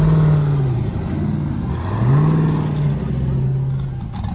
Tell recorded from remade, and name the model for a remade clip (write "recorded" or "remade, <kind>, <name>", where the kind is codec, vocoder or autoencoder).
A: recorded